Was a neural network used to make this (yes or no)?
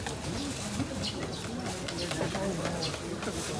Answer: no